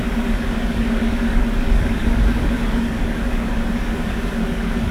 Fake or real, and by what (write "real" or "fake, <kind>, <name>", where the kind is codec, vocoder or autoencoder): fake, codec, DAC